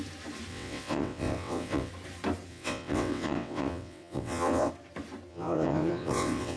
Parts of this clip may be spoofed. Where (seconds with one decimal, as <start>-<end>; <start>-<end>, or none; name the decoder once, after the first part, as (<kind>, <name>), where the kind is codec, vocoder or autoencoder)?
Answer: 0.5-1.9 (vocoder, WaveNeXt); 2.5-4.7; 5.3-6.6